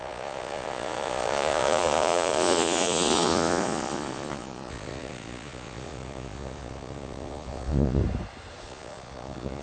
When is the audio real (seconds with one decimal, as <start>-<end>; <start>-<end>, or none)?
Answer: 8.0-8.6